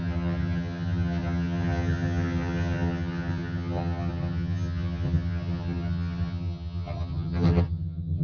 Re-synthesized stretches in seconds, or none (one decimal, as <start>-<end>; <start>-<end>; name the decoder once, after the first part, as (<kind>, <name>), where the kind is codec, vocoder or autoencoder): 0.0-8.2 (vocoder, HiFi-GAN)